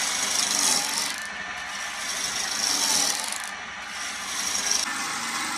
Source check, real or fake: real